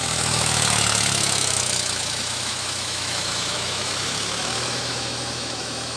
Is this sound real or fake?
fake